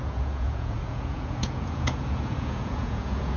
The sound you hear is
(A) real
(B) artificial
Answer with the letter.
B